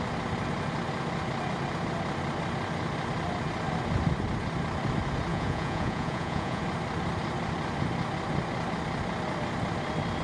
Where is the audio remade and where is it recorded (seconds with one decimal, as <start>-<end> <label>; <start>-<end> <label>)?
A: 0.0-5.3 recorded; 5.3-6.6 remade; 6.6-10.2 recorded